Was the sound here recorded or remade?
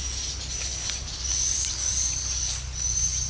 recorded